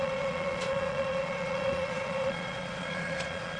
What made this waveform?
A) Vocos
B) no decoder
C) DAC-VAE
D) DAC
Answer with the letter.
A